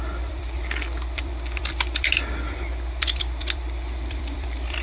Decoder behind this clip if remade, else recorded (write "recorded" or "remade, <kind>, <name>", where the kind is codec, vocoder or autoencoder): remade, vocoder, BigVGAN v2